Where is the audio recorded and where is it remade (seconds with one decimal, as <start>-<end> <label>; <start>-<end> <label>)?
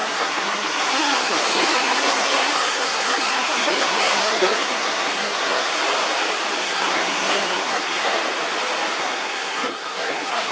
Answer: 0.0-5.7 remade; 5.7-6.6 recorded; 6.6-8.2 remade; 8.2-9.0 recorded; 9.0-10.5 remade